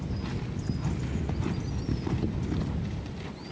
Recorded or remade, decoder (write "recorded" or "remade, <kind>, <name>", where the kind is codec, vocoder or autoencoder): recorded